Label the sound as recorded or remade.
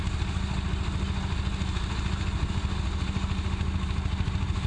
recorded